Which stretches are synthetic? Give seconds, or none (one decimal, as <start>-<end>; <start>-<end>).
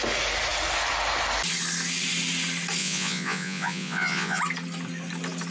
2.8-4.4